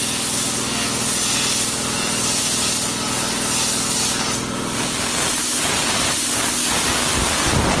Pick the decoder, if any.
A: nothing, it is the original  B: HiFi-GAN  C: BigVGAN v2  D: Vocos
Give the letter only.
A